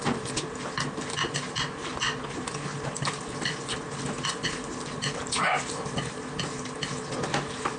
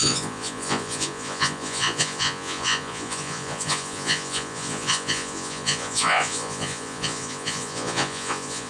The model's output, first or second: second